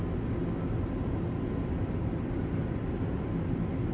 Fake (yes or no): no